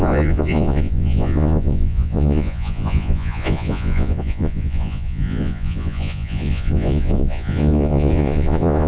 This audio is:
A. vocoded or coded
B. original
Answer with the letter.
A